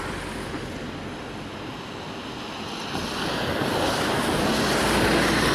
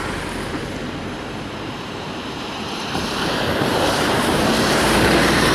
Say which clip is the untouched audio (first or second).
first